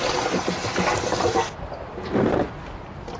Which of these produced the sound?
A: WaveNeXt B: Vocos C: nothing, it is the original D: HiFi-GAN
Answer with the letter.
C